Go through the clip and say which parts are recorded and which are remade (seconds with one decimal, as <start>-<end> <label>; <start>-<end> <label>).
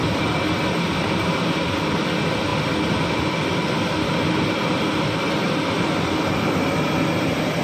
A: 0.0-7.6 recorded